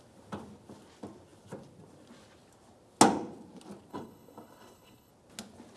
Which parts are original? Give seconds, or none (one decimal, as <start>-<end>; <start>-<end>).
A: 0.0-3.9; 5.1-5.8